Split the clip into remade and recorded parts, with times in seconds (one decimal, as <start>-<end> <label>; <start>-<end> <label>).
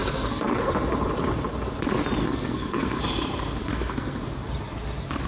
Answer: 0.0-0.7 remade; 0.7-2.2 recorded; 2.2-3.0 remade; 3.0-3.6 recorded; 3.6-4.2 remade; 4.2-5.3 recorded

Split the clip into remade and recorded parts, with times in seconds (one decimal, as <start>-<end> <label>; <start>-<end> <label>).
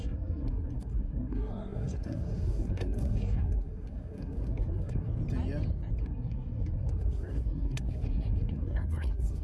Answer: 0.0-5.1 remade; 5.1-6.0 recorded; 6.0-9.4 remade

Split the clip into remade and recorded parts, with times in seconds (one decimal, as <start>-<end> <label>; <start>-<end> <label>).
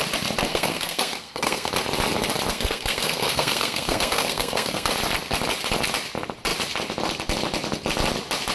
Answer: 0.0-0.5 recorded; 0.5-1.7 remade; 1.7-2.5 recorded; 2.5-4.9 remade; 4.9-8.5 recorded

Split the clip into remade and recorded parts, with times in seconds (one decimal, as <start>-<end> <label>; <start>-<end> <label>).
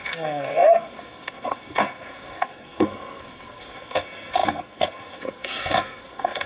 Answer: 0.0-6.5 remade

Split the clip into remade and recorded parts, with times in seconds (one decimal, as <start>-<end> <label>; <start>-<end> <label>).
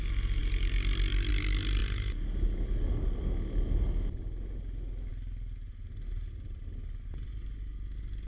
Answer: 0.0-8.3 recorded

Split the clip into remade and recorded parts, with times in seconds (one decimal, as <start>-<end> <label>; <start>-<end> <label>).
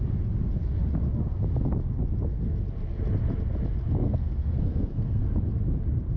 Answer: 0.0-4.0 recorded; 4.0-5.2 remade; 5.2-6.2 recorded